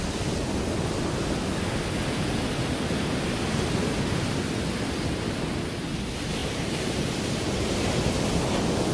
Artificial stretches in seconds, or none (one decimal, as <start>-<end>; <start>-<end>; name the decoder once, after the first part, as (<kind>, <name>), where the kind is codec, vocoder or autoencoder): 6.4-7.8 (vocoder, BigVGAN v2)